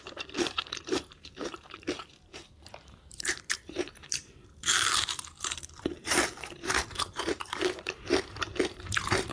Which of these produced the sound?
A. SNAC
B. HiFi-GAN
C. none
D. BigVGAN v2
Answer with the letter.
D